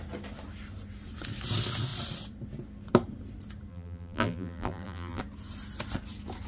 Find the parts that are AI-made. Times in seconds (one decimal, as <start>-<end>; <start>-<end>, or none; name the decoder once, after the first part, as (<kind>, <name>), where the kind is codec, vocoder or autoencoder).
3.7-5.2 (vocoder, BigVGAN v2)

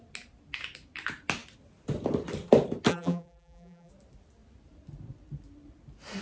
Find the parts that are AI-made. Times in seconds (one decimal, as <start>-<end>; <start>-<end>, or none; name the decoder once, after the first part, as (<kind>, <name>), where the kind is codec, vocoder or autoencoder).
2.9-3.9 (vocoder, BigVGAN v2)

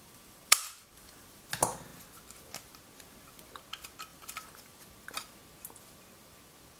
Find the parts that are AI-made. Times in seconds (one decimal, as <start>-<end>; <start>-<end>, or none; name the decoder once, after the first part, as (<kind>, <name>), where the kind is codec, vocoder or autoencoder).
0.0-1.4 (vocoder, BigVGAN v2); 4.1-4.8